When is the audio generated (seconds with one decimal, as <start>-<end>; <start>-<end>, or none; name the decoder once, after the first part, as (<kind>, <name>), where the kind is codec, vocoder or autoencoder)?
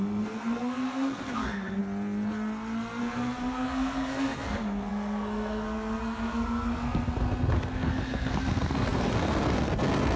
0.0-1.8 (codec, SNAC); 3.0-10.2